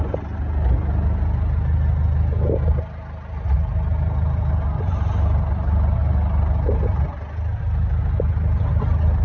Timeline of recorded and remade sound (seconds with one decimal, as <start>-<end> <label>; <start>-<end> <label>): 0.0-9.2 recorded